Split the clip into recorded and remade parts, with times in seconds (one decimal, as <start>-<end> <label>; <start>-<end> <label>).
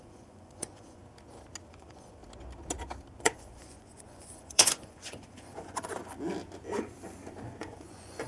0.0-1.0 remade; 1.0-1.7 recorded; 1.7-2.2 remade; 2.2-3.2 recorded; 3.2-6.0 remade; 6.0-7.6 recorded; 7.6-8.3 remade